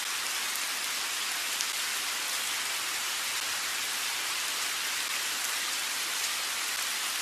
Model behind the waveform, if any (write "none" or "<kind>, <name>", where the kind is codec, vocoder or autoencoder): none